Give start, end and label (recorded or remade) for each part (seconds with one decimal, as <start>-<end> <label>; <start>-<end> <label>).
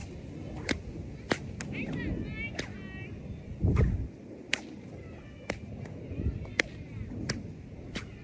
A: 0.0-8.2 recorded